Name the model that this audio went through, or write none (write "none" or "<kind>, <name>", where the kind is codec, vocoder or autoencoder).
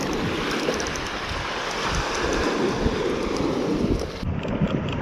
none